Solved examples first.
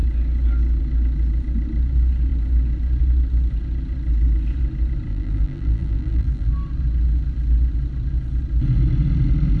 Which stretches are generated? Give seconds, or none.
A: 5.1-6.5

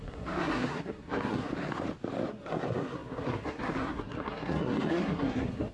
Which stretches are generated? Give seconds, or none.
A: 0.0-1.5; 2.3-5.7

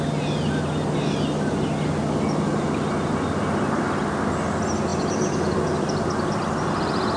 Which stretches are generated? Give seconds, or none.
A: none

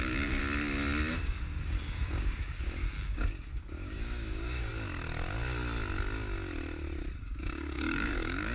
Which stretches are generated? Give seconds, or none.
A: 0.0-0.4; 1.1-4.7; 7.2-8.5